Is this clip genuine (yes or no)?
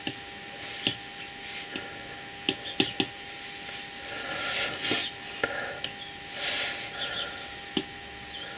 yes